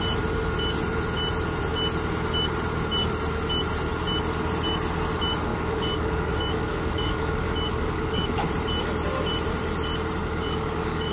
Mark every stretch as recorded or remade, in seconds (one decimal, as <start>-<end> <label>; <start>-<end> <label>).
0.0-5.5 recorded; 5.5-8.5 remade; 8.5-10.2 recorded; 10.2-11.1 remade